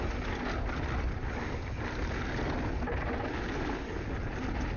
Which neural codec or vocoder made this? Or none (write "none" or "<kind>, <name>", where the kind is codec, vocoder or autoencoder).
none